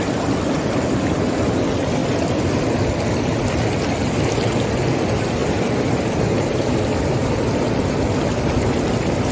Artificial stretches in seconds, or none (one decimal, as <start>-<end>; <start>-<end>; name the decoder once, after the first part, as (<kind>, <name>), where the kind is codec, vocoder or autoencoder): 7.2-7.8 (vocoder, BigVGAN v2)